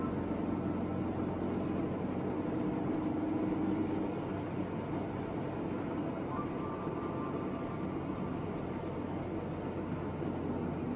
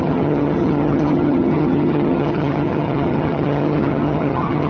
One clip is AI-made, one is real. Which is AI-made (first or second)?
second